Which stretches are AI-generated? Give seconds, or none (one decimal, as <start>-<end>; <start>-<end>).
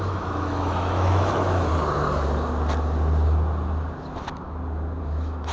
0.0-1.7; 5.0-5.5